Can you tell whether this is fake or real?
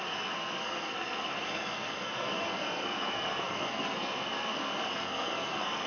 fake